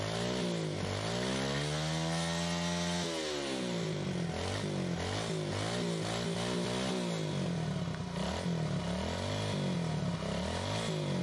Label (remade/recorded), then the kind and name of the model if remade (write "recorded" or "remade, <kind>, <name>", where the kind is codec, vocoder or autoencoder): recorded